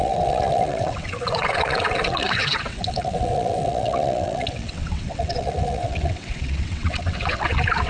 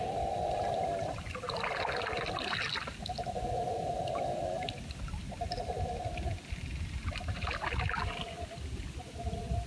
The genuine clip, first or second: second